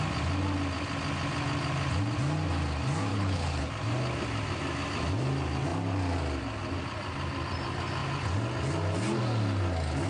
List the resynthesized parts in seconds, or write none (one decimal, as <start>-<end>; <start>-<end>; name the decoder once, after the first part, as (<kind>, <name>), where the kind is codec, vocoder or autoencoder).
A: 3.1-3.7 (codec, HILCodec)